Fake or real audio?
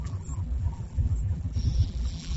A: fake